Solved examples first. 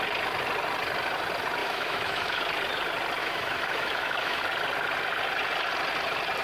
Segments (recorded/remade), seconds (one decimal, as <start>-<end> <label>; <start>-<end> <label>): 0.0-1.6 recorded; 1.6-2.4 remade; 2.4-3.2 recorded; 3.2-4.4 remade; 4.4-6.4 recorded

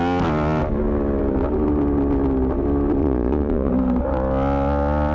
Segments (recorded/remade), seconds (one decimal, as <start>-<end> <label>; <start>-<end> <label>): 0.0-3.0 recorded; 3.0-3.7 remade; 3.7-5.1 recorded

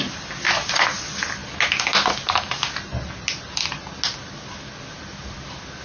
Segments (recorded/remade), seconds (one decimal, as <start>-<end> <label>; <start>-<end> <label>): 0.0-5.8 recorded